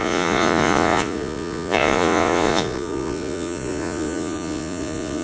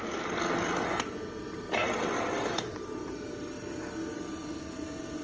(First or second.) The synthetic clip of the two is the first